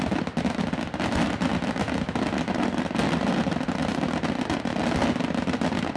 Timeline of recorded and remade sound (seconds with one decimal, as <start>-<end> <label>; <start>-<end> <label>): 0.0-6.0 recorded